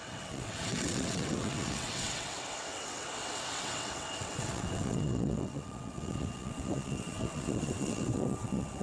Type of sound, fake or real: fake